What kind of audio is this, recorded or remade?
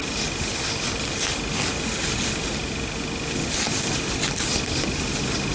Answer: recorded